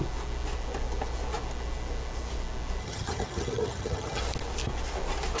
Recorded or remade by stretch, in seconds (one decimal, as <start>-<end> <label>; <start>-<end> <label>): 0.0-2.8 recorded; 2.8-4.2 remade; 4.2-5.4 recorded